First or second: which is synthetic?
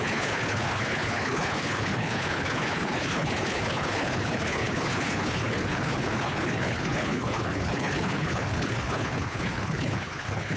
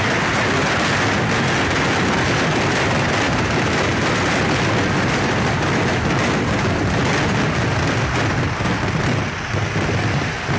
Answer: first